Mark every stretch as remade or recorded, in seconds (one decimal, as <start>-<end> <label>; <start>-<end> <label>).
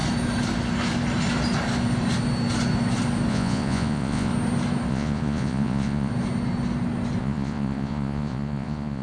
0.0-3.3 recorded; 3.3-4.3 remade; 4.3-4.9 recorded; 4.9-6.1 remade; 6.1-7.2 recorded; 7.2-9.0 remade